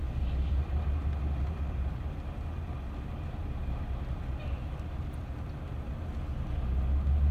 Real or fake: real